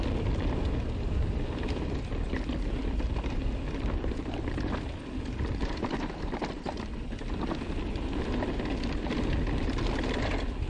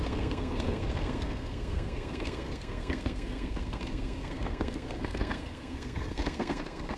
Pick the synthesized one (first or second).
second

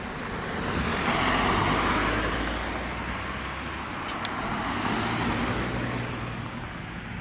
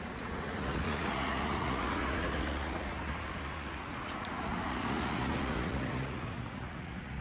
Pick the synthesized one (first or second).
second